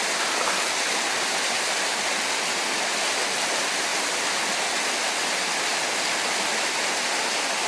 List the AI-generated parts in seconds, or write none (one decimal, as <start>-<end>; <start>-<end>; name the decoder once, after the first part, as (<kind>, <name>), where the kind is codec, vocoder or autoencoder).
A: none